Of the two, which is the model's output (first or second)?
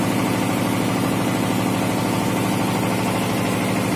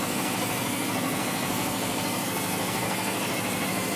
second